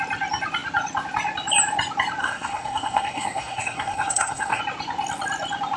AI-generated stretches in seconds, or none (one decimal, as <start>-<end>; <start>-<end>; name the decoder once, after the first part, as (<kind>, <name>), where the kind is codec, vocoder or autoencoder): 2.2-4.6 (codec, SNAC)